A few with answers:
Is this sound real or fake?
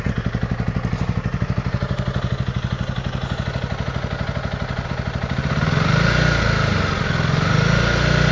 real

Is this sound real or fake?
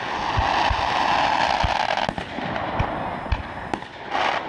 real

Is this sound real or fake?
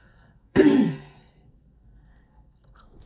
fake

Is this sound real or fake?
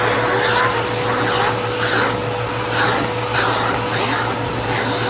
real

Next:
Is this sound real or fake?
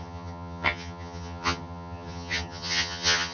fake